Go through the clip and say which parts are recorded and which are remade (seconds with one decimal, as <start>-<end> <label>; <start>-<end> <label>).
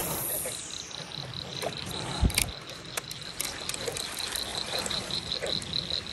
0.0-1.5 recorded; 1.5-2.2 remade; 2.2-4.5 recorded; 4.5-5.3 remade; 5.3-6.1 recorded